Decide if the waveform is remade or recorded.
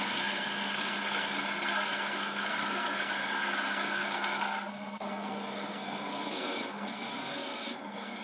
remade